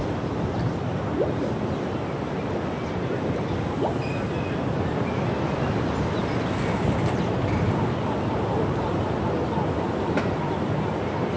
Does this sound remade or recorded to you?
recorded